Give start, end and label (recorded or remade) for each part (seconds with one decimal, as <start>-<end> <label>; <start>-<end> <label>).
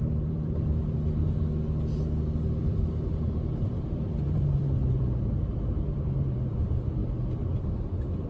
0.0-0.8 remade; 0.8-2.6 recorded; 2.6-7.0 remade; 7.0-7.6 recorded; 7.6-8.3 remade